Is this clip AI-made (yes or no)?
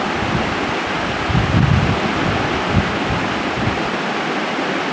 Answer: no